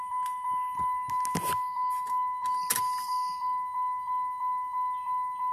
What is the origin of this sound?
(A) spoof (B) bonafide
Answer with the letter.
B